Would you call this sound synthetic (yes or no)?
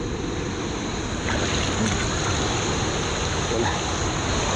no